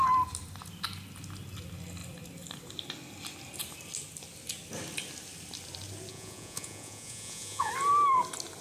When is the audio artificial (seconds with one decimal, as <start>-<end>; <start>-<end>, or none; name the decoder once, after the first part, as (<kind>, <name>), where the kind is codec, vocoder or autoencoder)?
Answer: 6.1-7.7 (vocoder, Vocos)